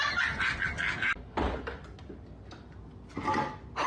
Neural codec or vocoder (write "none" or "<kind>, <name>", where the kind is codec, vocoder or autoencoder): none